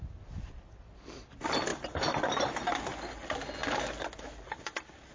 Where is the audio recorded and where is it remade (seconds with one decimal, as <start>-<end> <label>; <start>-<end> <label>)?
0.0-5.1 recorded